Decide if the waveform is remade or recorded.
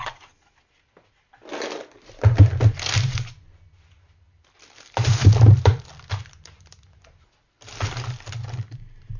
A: recorded